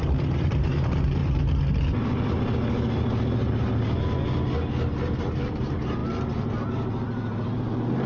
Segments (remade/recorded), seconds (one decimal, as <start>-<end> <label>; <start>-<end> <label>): 0.0-1.2 remade; 1.2-5.2 recorded; 5.2-6.0 remade; 6.0-6.7 recorded; 6.7-8.1 remade